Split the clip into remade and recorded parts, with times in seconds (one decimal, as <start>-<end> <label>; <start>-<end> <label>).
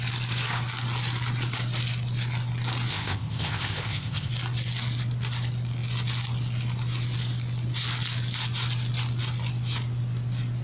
0.0-2.9 recorded; 2.9-4.3 remade; 4.3-10.6 recorded